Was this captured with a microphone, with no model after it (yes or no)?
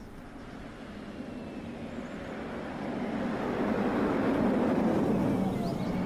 yes